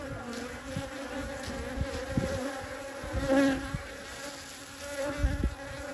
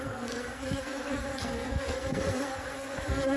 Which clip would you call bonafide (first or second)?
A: first